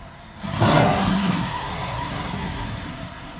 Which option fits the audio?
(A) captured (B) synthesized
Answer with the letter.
B